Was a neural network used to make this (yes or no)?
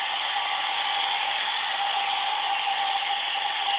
no